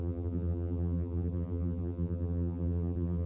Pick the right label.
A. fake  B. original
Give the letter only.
A